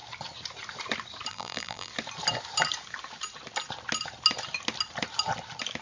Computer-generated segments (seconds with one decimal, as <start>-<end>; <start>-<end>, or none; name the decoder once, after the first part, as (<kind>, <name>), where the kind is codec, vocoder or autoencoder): 1.3-1.9 (vocoder, BigVGAN v2)